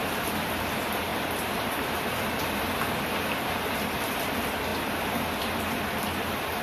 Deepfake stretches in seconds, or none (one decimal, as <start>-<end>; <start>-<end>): 1.1-2.4